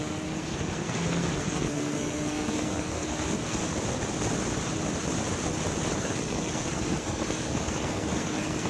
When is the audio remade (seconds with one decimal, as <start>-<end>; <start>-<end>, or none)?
0.0-3.6; 6.0-8.7